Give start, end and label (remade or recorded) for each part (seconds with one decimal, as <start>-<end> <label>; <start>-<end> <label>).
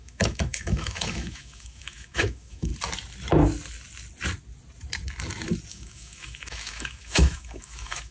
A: 0.0-2.7 remade; 2.7-5.7 recorded; 5.7-8.1 remade